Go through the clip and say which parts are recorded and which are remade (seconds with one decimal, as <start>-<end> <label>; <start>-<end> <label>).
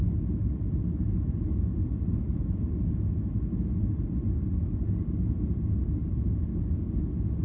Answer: 0.0-7.4 recorded